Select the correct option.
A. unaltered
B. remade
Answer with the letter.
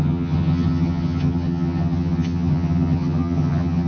B